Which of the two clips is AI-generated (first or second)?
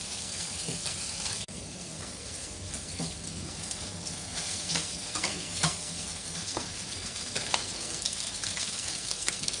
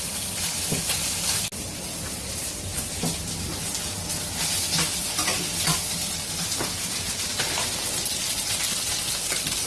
first